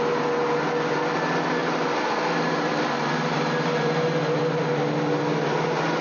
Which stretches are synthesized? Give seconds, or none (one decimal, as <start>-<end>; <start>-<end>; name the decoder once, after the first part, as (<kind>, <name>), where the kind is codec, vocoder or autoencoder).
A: 1.6-4.6 (vocoder, BigVGAN v2)